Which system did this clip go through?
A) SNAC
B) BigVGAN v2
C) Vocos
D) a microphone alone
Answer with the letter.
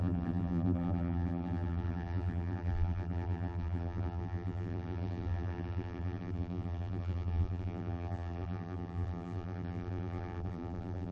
B